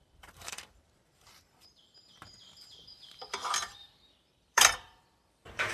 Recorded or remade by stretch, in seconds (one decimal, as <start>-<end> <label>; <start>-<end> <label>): 0.0-1.8 remade; 1.8-4.1 recorded; 4.1-5.7 remade